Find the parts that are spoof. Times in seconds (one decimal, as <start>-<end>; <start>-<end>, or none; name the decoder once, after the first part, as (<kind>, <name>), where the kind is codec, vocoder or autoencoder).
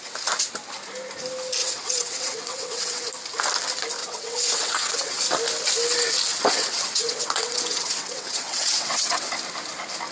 1.6-3.1 (vocoder, WaveNeXt); 4.0-5.2; 6.3-9.3